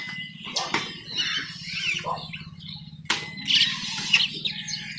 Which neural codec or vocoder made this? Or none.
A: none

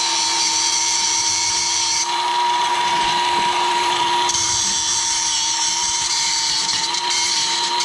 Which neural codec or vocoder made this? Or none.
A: vocoder, BigVGAN v2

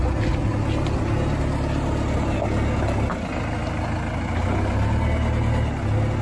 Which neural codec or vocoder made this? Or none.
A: none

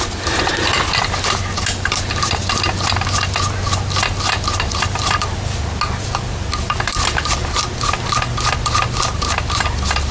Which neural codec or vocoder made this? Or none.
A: none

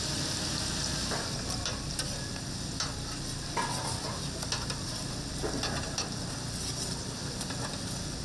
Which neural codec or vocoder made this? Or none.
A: none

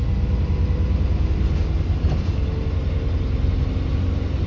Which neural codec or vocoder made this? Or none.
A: none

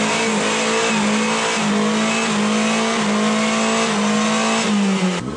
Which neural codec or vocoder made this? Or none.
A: none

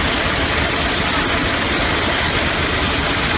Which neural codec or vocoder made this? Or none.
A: none